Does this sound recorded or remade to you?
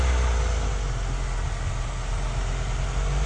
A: recorded